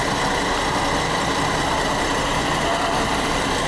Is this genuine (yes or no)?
yes